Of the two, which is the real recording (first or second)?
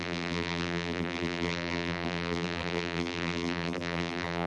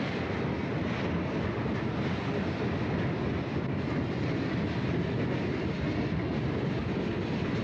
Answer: second